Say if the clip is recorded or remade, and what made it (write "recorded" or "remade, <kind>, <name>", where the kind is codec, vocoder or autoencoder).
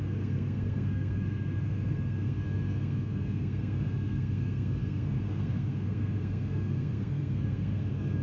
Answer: remade, codec, SNAC